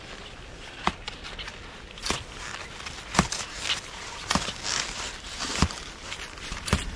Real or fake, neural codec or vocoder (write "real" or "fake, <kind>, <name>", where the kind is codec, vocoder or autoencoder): real